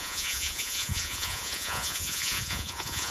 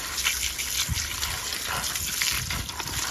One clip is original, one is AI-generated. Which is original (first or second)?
second